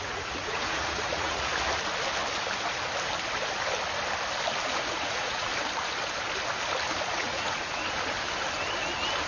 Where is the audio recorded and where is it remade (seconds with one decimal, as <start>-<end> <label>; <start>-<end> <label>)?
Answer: 0.0-1.5 remade; 1.5-5.0 recorded; 5.0-5.5 remade; 5.5-7.1 recorded; 7.1-7.8 remade; 7.8-9.3 recorded